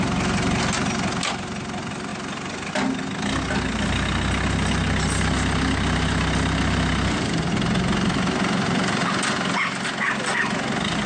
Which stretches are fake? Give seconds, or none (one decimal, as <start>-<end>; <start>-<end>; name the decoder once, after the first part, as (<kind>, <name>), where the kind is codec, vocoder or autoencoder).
none